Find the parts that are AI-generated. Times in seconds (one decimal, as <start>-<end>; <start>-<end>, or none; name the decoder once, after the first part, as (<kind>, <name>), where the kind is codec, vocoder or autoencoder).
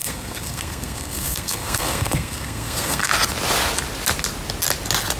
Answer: 0.0-3.1 (codec, SNAC)